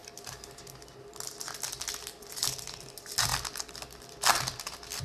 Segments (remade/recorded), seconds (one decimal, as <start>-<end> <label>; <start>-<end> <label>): 0.0-0.6 remade; 0.6-5.0 recorded